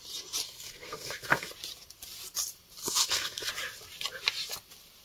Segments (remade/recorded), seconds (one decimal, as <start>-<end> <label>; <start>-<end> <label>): 0.0-0.4 recorded; 0.4-1.5 remade; 1.5-2.8 recorded; 2.8-3.5 remade; 3.5-5.0 recorded